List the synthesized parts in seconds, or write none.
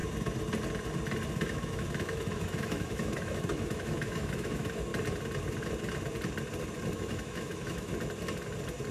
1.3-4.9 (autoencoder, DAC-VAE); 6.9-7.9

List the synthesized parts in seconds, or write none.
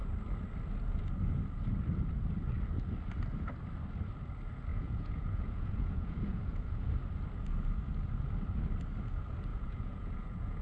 4.7-6.9 (vocoder, Vocos); 9.5-10.6